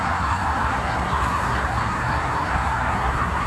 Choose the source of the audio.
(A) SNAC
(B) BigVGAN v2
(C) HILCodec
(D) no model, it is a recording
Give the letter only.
A